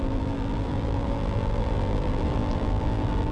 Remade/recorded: remade